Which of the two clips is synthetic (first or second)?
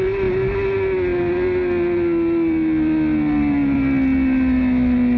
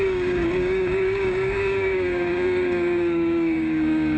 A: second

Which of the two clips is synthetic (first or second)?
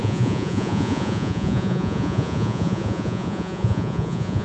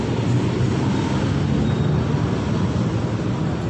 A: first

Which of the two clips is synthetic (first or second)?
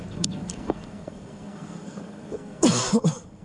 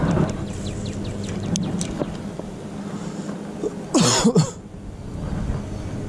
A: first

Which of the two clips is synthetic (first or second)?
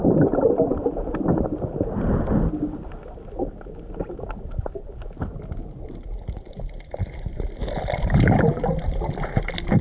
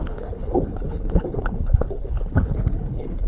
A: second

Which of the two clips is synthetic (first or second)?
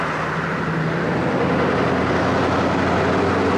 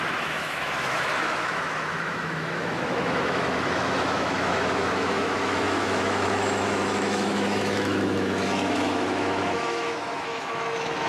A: second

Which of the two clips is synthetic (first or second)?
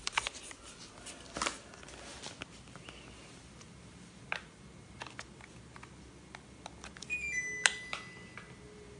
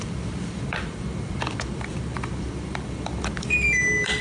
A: second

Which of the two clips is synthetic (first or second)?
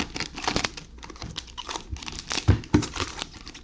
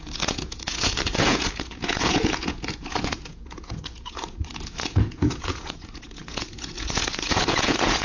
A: second